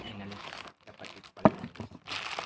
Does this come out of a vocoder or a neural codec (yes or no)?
no